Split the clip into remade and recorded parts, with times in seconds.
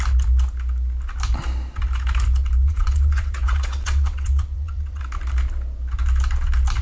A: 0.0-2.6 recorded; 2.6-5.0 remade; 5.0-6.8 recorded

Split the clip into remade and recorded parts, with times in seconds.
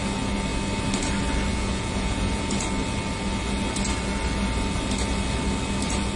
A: 0.0-1.5 recorded; 1.5-2.5 remade; 2.5-6.2 recorded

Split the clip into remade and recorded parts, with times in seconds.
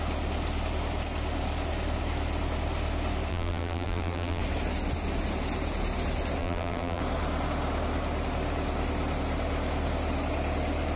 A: 0.0-3.3 recorded; 3.3-4.4 remade; 4.4-6.4 recorded; 6.4-7.0 remade; 7.0-11.0 recorded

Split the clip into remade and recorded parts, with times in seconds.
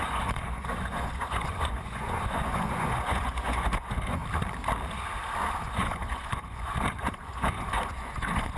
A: 0.0-4.2 remade; 4.2-5.6 recorded; 5.6-8.6 remade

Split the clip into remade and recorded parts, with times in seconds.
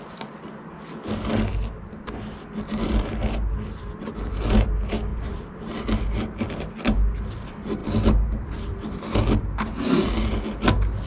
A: 0.0-5.1 recorded; 5.1-5.7 remade; 5.7-11.1 recorded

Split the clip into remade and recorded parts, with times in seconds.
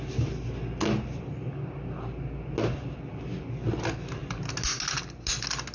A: 0.0-5.7 recorded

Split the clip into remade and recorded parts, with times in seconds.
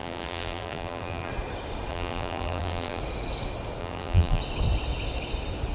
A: 0.0-1.3 remade; 1.3-1.9 recorded; 1.9-3.0 remade; 3.0-3.8 recorded; 3.8-4.4 remade; 4.4-5.7 recorded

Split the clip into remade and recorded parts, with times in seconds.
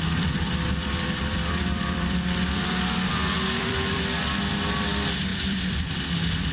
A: 0.0-0.8 recorded; 0.8-4.0 remade; 4.0-5.3 recorded; 5.3-6.0 remade; 6.0-6.5 recorded